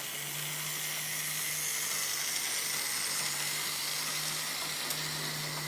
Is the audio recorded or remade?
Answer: recorded